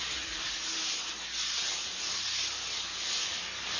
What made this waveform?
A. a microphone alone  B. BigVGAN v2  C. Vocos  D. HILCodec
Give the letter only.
B